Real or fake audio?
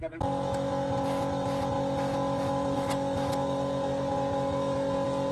real